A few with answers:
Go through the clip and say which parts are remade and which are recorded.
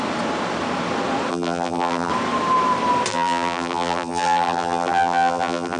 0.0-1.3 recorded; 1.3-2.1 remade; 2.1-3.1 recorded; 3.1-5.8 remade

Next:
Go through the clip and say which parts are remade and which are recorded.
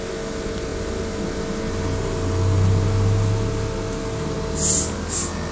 0.0-5.5 recorded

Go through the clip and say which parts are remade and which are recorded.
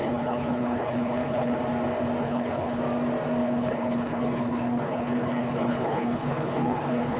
0.0-1.6 remade; 1.6-2.2 recorded; 2.2-2.8 remade; 2.8-3.4 recorded; 3.4-7.2 remade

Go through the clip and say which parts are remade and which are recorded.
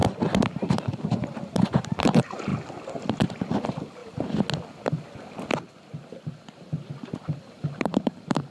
0.0-2.5 remade; 2.5-3.3 recorded; 3.3-4.0 remade; 4.0-7.5 recorded; 7.5-8.5 remade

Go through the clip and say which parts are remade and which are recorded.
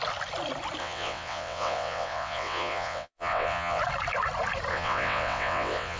0.0-0.8 recorded; 0.8-3.8 remade; 3.8-4.7 recorded; 4.7-6.0 remade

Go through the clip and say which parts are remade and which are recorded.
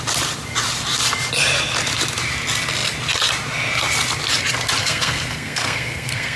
0.0-4.8 recorded; 4.8-6.4 remade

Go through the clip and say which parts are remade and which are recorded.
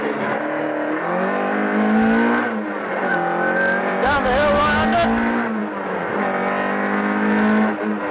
0.0-8.1 recorded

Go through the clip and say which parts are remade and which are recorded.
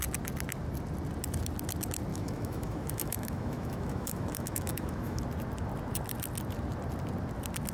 0.0-2.1 recorded; 2.1-5.2 remade; 5.2-7.7 recorded